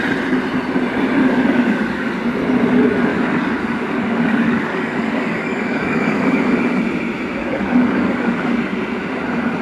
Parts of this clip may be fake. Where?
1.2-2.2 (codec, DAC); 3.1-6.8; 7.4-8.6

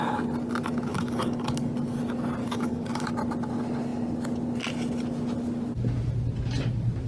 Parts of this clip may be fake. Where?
0.9-1.7 (codec, DAC); 2.4-3.1

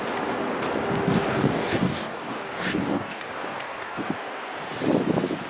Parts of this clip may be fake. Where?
1.3-4.1 (codec, DAC)

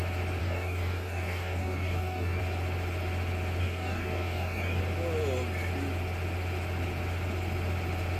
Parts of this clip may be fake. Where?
0.4-2.4 (codec, DAC); 3.6-4.8

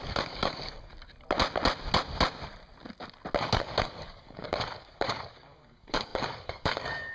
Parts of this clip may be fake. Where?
0.0-0.9 (codec, DAC); 3.4-7.1